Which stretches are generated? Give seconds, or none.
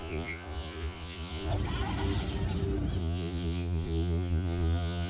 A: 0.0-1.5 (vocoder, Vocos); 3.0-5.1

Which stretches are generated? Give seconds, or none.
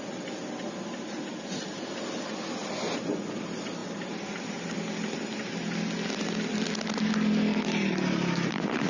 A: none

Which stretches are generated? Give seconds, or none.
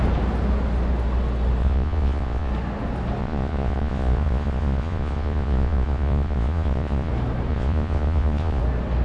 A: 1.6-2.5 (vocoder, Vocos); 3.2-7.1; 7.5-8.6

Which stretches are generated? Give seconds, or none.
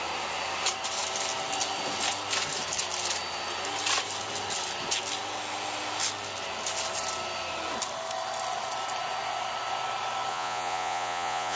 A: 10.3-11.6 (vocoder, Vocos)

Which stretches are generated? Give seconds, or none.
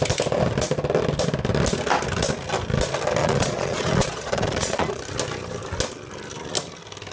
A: 3.2-5.0 (vocoder, Vocos)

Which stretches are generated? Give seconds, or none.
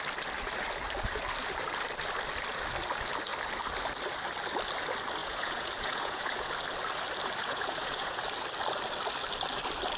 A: 5.2-6.5 (vocoder, Vocos); 7.4-8.2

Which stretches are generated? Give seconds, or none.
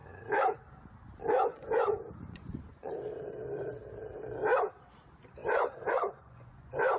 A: 1.5-2.9 (vocoder, Vocos); 5.4-7.0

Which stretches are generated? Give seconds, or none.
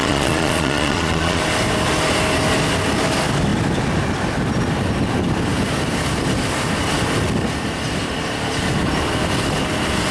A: 0.0-1.4 (vocoder, Vocos)